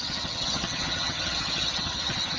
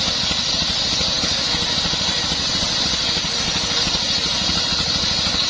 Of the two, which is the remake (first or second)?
first